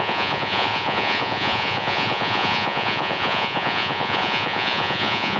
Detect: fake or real fake